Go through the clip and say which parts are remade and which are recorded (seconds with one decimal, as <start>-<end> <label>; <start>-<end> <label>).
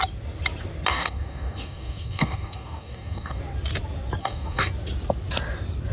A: 0.0-0.9 recorded; 0.9-3.4 remade; 3.4-4.2 recorded; 4.2-4.7 remade; 4.7-5.9 recorded